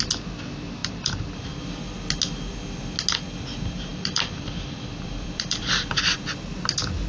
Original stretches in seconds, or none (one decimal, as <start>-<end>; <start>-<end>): 0.0-0.8; 1.6-3.9; 6.3-7.1